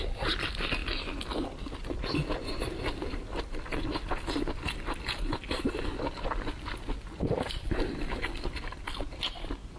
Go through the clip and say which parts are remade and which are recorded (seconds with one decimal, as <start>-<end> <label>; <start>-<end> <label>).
0.0-9.8 recorded

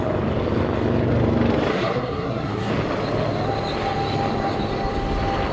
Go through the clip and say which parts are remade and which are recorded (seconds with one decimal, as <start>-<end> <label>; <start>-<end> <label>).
0.0-1.7 recorded; 1.7-2.7 remade; 2.7-5.5 recorded

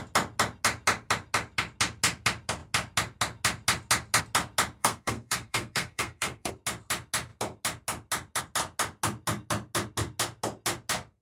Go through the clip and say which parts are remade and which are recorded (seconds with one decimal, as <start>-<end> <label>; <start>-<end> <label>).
0.0-4.8 recorded; 4.8-6.5 remade; 6.5-11.2 recorded

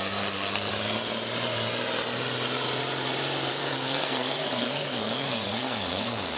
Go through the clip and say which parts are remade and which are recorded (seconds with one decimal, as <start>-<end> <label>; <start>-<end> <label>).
0.0-0.7 remade; 0.7-3.5 recorded; 3.5-6.4 remade

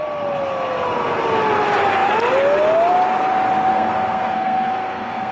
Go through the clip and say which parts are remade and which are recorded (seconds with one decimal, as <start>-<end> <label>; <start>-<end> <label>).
0.0-3.7 recorded; 3.7-5.3 remade

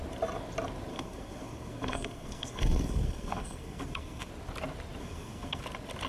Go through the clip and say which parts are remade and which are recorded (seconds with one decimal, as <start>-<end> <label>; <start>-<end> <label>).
0.0-0.9 recorded; 0.9-4.3 remade; 4.3-5.0 recorded; 5.0-5.6 remade; 5.6-6.1 recorded